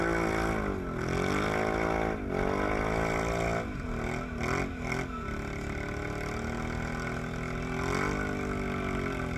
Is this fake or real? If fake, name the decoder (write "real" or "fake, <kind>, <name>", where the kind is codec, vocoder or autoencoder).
real